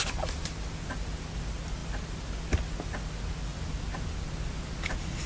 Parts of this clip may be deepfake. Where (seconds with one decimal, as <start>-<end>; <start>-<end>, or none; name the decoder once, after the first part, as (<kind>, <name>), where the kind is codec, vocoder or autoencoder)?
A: none